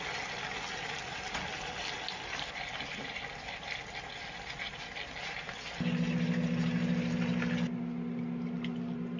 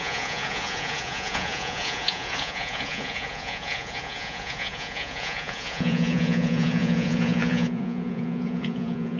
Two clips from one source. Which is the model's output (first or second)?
second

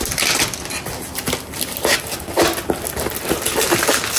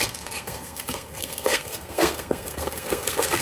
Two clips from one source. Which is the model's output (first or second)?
second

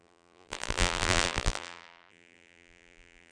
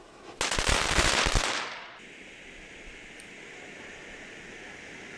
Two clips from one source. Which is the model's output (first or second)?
first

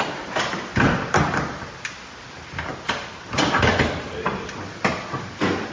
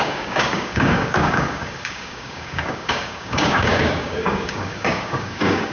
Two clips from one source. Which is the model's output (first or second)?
second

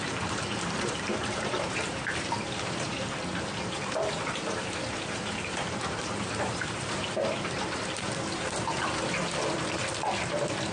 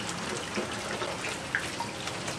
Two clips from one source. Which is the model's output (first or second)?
first